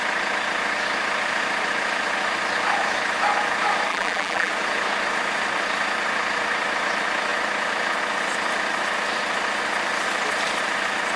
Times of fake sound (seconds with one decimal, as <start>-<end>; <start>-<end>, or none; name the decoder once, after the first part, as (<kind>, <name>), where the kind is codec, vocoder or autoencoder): 3.9-4.5 (vocoder, BigVGAN v2)